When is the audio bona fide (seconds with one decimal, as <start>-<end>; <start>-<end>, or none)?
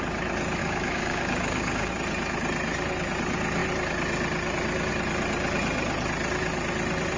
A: 0.0-0.6; 1.9-7.2